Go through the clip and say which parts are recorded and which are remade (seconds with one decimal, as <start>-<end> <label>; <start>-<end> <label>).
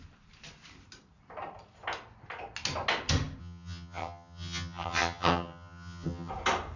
0.0-3.4 recorded; 3.4-6.3 remade; 6.3-6.8 recorded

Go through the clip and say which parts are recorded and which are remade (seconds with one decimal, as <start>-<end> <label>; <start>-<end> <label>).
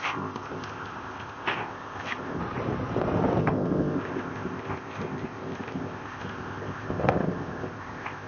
0.0-2.4 remade; 2.4-3.4 recorded; 3.4-8.3 remade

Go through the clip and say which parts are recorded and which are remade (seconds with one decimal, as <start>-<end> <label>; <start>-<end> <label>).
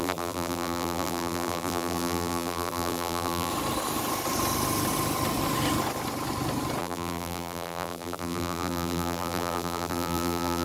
0.0-3.5 remade; 3.5-6.8 recorded; 6.8-10.6 remade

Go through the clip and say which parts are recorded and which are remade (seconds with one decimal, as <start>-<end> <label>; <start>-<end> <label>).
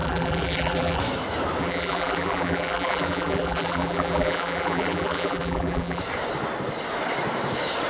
0.0-1.0 remade; 1.0-1.6 recorded; 1.6-6.0 remade; 6.0-7.9 recorded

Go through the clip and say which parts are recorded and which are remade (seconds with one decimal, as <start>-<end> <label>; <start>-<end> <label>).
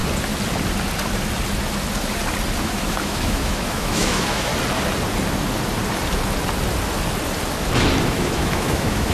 0.0-2.6 recorded; 2.6-4.5 remade; 4.5-8.0 recorded; 8.0-9.1 remade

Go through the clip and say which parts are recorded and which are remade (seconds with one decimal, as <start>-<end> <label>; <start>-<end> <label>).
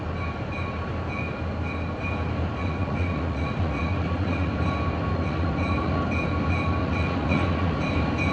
0.0-2.6 recorded; 2.6-4.5 remade; 4.5-5.1 recorded; 5.1-6.0 remade; 6.0-6.8 recorded; 6.8-7.8 remade; 7.8-8.3 recorded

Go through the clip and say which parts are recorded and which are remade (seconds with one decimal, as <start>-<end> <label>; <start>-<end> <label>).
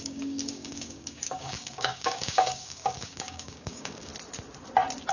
0.0-4.1 remade; 4.1-5.1 recorded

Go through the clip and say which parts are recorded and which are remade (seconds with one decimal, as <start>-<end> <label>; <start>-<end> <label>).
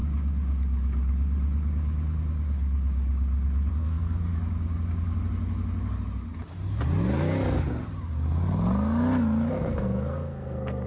0.0-3.7 recorded; 3.7-4.3 remade; 4.3-9.5 recorded; 9.5-10.9 remade